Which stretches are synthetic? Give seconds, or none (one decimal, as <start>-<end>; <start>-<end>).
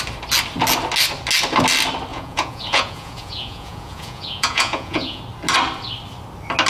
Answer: 2.1-5.2